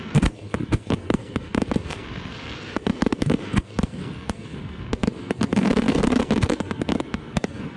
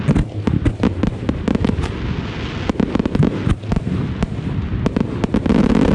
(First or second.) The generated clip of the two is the first